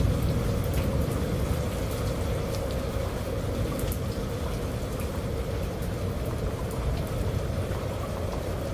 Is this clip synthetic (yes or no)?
no